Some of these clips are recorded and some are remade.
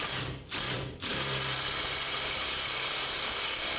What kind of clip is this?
remade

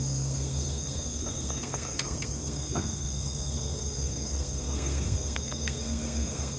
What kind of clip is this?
remade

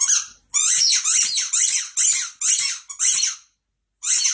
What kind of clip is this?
recorded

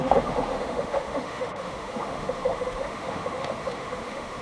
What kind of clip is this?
remade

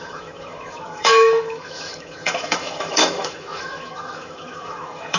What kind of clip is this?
remade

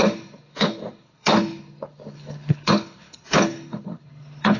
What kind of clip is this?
remade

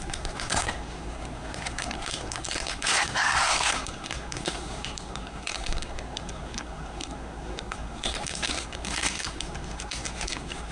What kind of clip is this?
remade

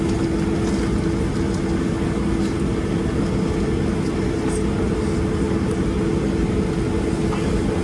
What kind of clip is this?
recorded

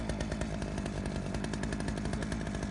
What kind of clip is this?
recorded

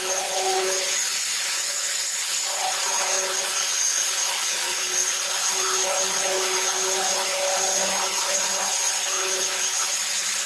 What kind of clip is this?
remade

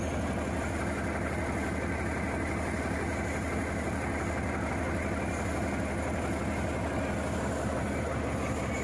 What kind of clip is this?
recorded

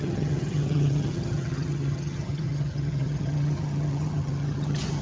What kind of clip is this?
remade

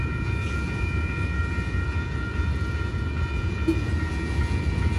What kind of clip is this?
remade